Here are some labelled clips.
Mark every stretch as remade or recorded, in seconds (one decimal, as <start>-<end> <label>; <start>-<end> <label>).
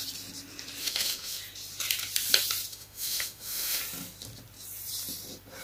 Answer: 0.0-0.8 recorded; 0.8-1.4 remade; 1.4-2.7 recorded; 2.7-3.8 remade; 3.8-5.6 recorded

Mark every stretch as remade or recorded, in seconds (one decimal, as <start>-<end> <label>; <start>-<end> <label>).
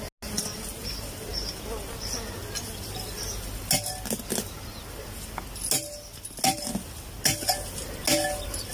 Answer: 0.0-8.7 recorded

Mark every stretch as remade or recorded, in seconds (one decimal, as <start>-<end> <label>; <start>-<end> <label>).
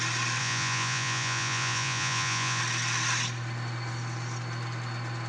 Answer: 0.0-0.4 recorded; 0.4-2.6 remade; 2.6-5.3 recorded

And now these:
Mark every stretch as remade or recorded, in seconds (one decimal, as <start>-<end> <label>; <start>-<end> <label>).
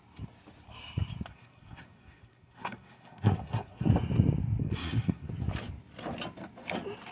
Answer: 0.0-1.3 recorded; 1.3-3.9 remade; 3.9-4.6 recorded; 4.6-5.3 remade; 5.3-7.1 recorded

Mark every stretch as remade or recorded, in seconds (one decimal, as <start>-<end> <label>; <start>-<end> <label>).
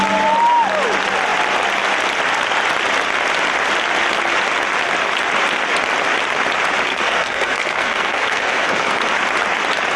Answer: 0.0-6.9 recorded; 6.9-9.0 remade; 9.0-10.0 recorded